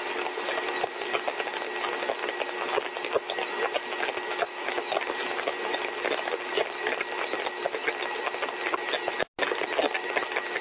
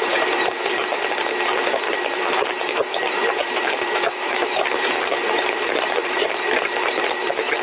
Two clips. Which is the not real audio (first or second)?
second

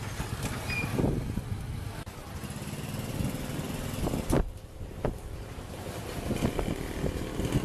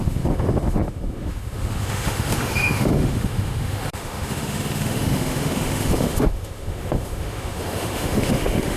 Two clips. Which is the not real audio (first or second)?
second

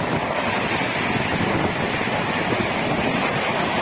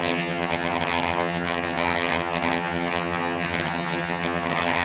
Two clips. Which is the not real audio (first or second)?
second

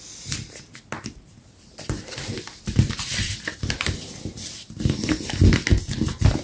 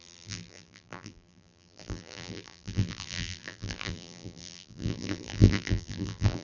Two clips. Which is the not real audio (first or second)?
second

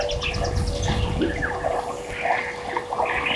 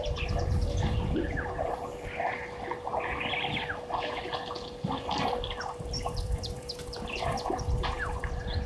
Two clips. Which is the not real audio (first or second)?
second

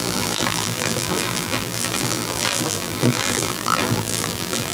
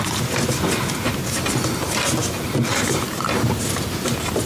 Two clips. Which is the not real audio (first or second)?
first